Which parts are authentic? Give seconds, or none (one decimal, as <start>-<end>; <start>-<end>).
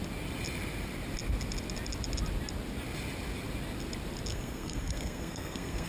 0.0-4.3